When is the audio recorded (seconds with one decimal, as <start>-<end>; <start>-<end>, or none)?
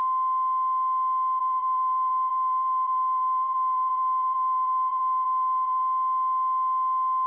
0.0-1.4; 5.8-7.3